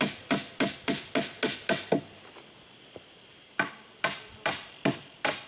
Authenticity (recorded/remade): recorded